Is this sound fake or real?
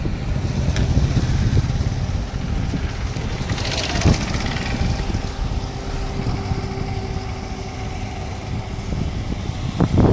real